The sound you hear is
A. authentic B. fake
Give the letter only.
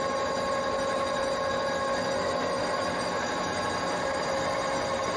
A